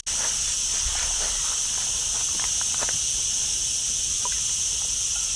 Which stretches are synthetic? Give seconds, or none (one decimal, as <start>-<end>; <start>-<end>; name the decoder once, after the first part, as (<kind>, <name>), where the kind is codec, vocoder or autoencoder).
none